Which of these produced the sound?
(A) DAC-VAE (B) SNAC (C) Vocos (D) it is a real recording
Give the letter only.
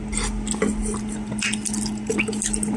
D